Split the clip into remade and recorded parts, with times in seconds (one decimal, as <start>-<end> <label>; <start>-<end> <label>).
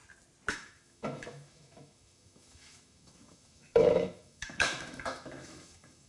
0.0-0.5 recorded; 0.5-6.1 remade